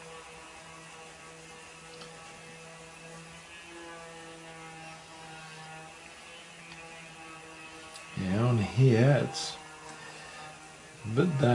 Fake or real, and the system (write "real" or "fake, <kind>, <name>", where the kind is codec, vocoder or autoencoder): real